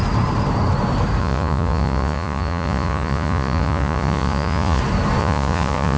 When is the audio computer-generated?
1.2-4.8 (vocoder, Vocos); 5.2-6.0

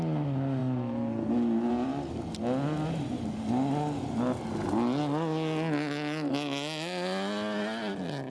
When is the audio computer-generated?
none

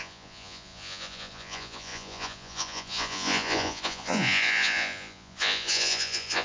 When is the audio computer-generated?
0.0-6.4 (vocoder, Vocos)

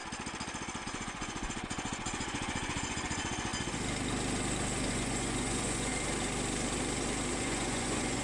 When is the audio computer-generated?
0.8-3.5 (vocoder, Vocos); 4.9-5.9; 7.4-8.2